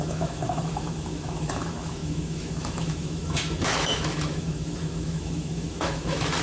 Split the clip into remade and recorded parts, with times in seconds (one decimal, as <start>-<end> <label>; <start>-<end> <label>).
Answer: 0.0-6.4 remade